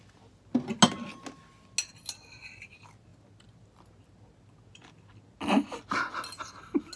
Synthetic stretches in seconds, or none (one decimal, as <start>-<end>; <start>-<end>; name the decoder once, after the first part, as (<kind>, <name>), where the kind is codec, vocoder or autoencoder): none